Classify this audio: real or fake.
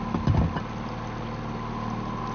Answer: real